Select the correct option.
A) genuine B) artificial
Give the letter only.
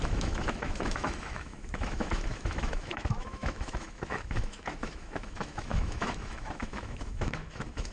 B